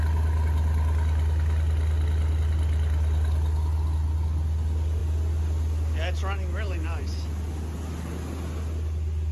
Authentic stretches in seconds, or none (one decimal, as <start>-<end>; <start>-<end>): 0.0-9.3